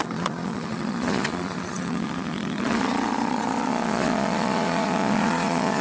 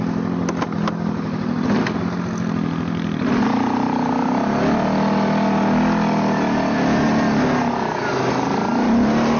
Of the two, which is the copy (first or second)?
first